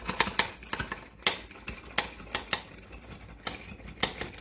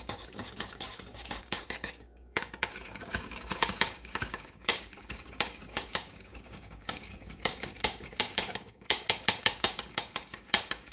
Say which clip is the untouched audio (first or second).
first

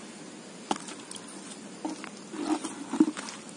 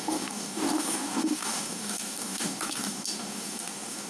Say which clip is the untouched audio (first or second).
first